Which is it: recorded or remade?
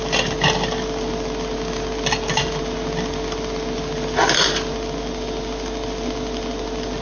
recorded